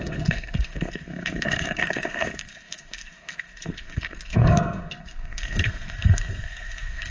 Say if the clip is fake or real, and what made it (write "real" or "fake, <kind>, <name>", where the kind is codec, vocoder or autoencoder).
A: fake, codec, SNAC